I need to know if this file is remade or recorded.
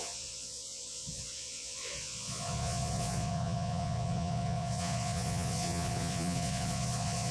remade